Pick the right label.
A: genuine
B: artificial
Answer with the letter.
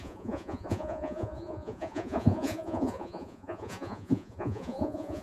B